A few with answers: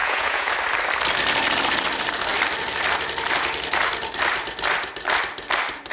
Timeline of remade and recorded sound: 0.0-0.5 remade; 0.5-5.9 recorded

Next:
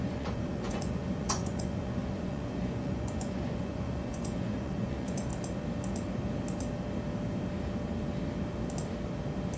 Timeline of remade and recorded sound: 0.0-5.3 remade; 5.3-9.6 recorded

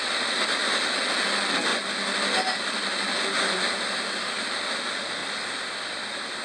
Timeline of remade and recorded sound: 0.0-6.4 recorded

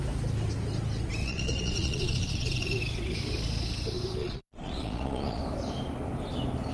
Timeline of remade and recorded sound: 0.0-1.2 recorded; 1.2-2.8 remade; 2.8-4.2 recorded; 4.2-5.4 remade; 5.4-6.7 recorded

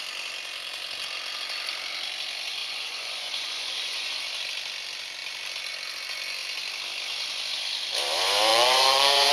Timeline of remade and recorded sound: 0.0-2.6 recorded; 2.6-4.2 remade; 4.2-8.5 recorded; 8.5-9.3 remade